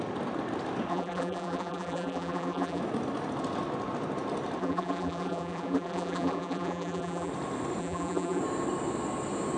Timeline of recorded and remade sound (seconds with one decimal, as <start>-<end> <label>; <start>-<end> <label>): 0.0-0.9 recorded; 0.9-2.8 remade; 2.8-4.6 recorded; 4.6-7.3 remade; 7.3-7.8 recorded; 7.8-8.4 remade; 8.4-9.6 recorded